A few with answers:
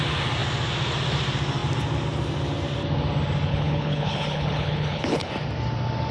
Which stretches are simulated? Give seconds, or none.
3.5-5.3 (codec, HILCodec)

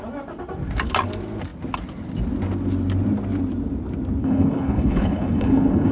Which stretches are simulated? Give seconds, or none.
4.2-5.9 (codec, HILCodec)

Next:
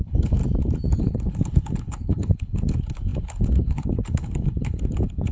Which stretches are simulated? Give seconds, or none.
0.0-0.4 (codec, HILCodec); 1.0-5.3

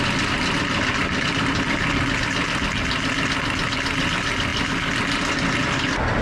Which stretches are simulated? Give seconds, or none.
none

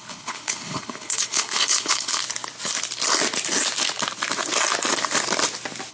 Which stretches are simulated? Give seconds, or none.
0.0-2.2 (codec, HILCodec)